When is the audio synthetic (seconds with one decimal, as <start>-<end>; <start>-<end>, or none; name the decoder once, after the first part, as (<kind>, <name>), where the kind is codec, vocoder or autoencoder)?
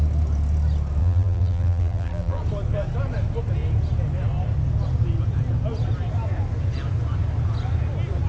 1.0-2.4 (vocoder, BigVGAN v2)